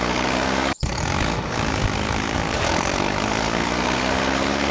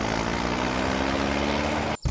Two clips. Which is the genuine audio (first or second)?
second